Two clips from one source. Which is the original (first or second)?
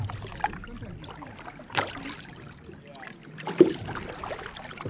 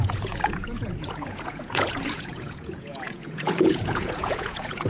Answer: first